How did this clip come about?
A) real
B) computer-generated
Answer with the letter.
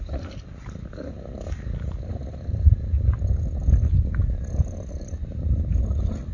A